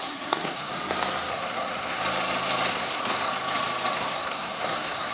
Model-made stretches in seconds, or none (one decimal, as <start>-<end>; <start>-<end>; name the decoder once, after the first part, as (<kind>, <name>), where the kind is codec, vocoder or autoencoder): 0.0-0.7 (codec, SNAC); 1.3-2.0; 2.7-3.3; 3.9-5.1